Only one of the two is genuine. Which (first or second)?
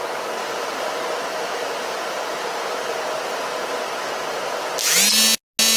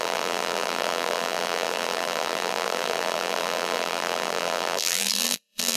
first